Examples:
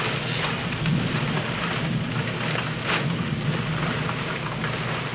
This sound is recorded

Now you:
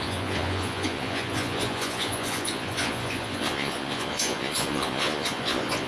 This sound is remade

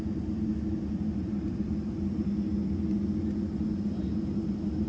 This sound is recorded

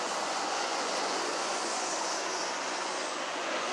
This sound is remade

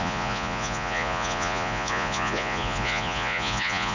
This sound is remade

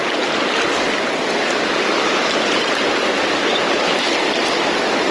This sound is recorded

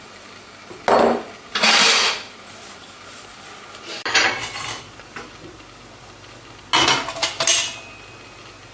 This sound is recorded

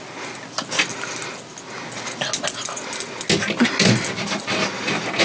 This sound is recorded